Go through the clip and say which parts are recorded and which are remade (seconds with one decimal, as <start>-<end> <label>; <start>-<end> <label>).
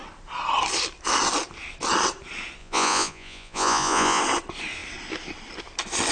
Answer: 0.0-2.6 recorded; 2.6-4.2 remade; 4.2-6.1 recorded